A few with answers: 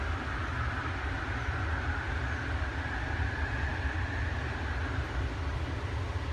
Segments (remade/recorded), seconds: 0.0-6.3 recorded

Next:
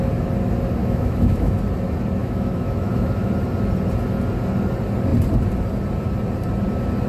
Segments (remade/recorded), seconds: 0.0-0.8 recorded; 0.8-1.6 remade; 1.6-2.2 recorded; 2.2-3.3 remade; 3.3-7.1 recorded

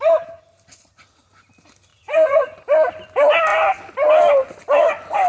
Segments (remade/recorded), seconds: 0.0-1.9 recorded; 1.9-2.5 remade; 2.5-5.3 recorded

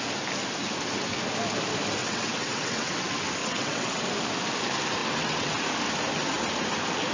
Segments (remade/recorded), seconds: 0.0-2.0 recorded; 2.0-2.9 remade; 2.9-3.4 recorded; 3.4-4.0 remade; 4.0-5.0 recorded; 5.0-5.5 remade; 5.5-7.1 recorded

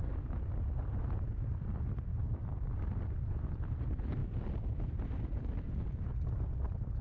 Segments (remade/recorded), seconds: 0.0-2.1 recorded; 2.1-2.7 remade; 2.7-4.2 recorded; 4.2-4.8 remade; 4.8-7.0 recorded

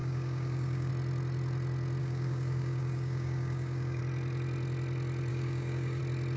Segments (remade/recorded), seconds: 0.0-0.9 remade; 0.9-2.0 recorded; 2.0-4.0 remade; 4.0-5.3 recorded; 5.3-6.0 remade; 6.0-6.4 recorded

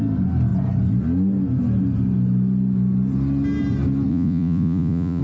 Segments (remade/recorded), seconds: 0.0-4.1 recorded; 4.1-5.2 remade

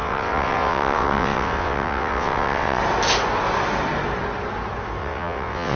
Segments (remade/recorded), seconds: 0.0-2.8 remade; 2.8-5.0 recorded; 5.0-5.8 remade